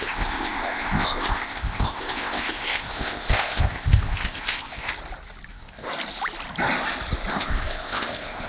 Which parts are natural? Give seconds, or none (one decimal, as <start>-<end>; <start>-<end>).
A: 4.9-5.5; 5.9-7.3